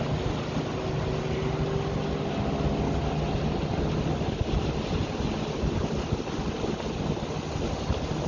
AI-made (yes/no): no